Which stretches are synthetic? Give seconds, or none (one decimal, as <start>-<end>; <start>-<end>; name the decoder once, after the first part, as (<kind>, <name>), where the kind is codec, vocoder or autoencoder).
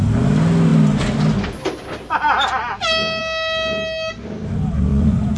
4.9-5.4 (vocoder, Vocos)